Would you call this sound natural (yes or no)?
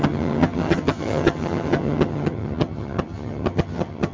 no